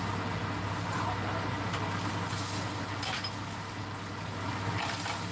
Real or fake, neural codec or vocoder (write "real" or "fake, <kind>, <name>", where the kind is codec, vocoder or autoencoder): real